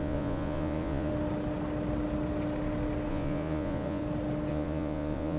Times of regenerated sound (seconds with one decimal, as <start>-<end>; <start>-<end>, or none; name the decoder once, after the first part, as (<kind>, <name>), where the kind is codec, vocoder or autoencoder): 0.0-1.1 (vocoder, Vocos); 3.1-4.0; 4.5-5.4